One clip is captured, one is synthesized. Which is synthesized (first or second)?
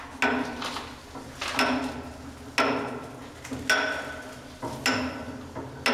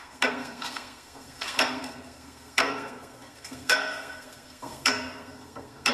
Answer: second